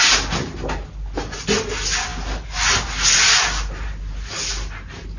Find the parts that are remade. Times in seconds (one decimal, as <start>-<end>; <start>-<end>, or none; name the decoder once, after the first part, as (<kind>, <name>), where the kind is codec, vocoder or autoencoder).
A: none